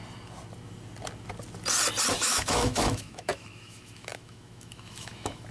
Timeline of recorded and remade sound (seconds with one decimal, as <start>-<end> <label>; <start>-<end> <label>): 0.0-2.1 recorded; 2.1-5.5 remade